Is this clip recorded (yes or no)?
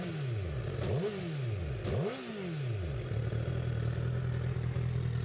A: yes